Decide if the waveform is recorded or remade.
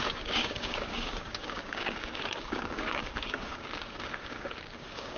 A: remade